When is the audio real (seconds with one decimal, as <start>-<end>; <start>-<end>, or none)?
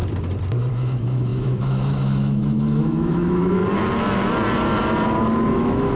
0.0-0.7; 3.6-5.5